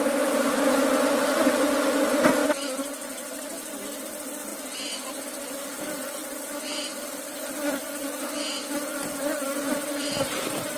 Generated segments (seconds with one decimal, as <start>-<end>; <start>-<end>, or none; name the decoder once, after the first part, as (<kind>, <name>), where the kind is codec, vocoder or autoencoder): 9.8-10.4 (vocoder, BigVGAN v2)